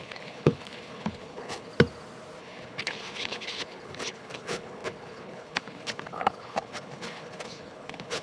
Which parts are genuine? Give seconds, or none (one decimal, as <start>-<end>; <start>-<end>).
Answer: 1.7-2.4